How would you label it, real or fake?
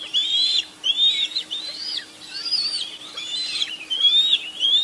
fake